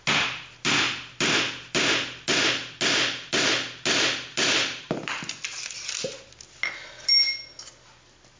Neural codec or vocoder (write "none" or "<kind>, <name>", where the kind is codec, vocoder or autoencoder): none